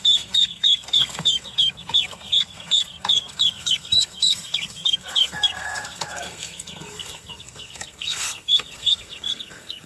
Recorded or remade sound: remade